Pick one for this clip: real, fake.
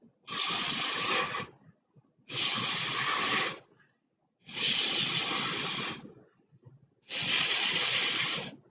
real